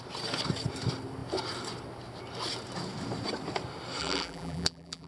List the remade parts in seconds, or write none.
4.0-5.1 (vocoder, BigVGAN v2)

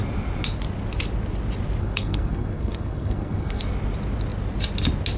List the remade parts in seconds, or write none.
1.8-3.6 (codec, SNAC)

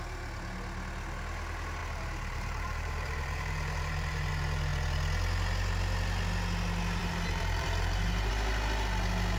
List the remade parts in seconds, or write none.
1.8-4.3 (vocoder, BigVGAN v2); 7.0-8.3

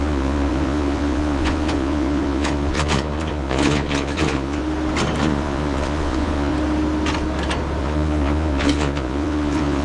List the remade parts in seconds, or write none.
0.0-4.6 (vocoder, Vocos); 5.2-6.5; 7.8-9.8